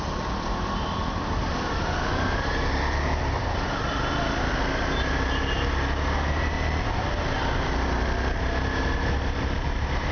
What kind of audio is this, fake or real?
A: real